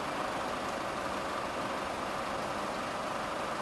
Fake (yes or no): no